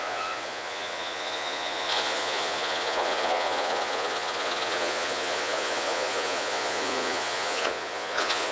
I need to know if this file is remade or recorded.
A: remade